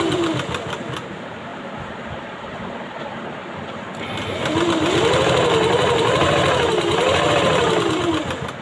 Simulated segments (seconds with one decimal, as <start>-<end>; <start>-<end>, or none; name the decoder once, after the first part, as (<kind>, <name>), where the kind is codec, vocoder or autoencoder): none